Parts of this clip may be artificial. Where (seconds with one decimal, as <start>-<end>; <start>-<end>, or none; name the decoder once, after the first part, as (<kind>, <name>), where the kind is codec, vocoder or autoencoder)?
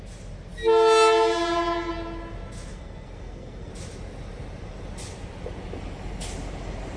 2.7-3.7 (codec, SNAC)